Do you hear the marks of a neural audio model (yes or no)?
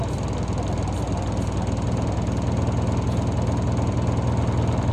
no